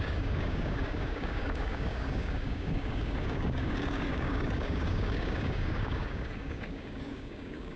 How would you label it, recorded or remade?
remade